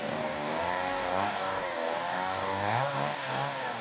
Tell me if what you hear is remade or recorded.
remade